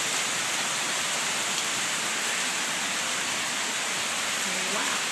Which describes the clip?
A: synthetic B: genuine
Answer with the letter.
A